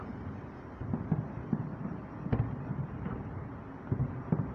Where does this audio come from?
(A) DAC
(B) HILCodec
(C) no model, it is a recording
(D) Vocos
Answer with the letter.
C